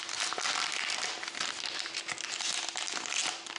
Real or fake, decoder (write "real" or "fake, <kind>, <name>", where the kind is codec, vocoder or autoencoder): real